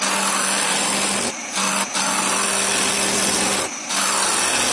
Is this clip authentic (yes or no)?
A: yes